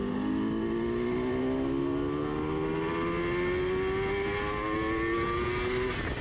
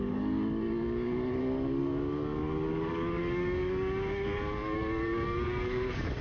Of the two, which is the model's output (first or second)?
second